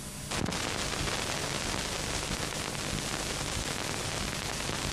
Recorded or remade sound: recorded